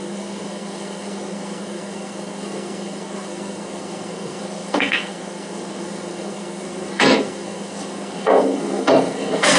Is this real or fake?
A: fake